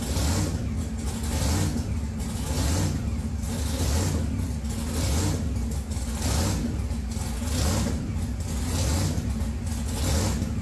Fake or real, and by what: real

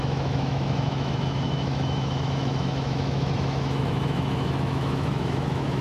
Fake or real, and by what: fake, autoencoder, DAC-VAE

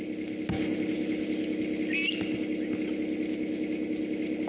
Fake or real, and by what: real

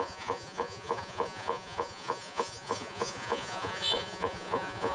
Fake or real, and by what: fake, vocoder, Vocos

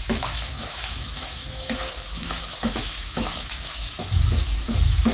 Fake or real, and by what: fake, autoencoder, DAC-VAE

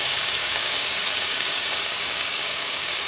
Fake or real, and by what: fake, codec, DAC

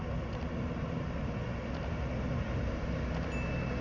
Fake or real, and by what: real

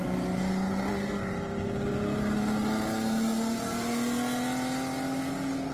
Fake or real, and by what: real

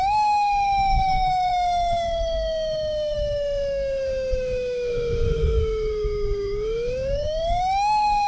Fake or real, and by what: fake, autoencoder, DAC-VAE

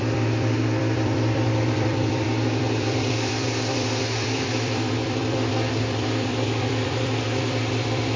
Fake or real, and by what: fake, vocoder, BigVGAN v2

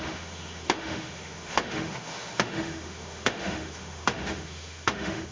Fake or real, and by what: fake, autoencoder, DAC-VAE